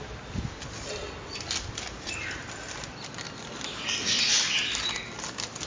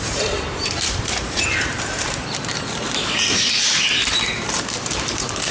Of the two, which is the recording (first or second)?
first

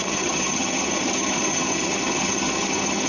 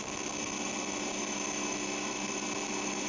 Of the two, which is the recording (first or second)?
second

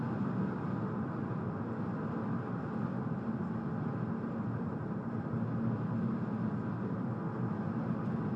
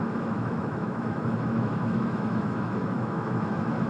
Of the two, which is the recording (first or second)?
first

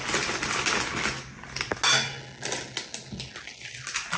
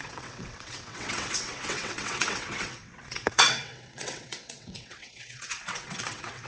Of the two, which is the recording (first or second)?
first